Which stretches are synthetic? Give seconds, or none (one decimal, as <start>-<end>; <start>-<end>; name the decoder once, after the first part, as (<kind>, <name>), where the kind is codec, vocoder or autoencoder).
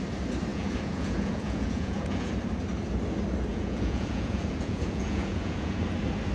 0.5-2.3 (vocoder, Vocos); 3.5-5.8